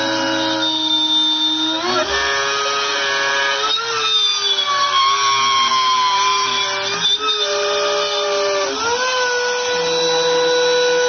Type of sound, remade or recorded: recorded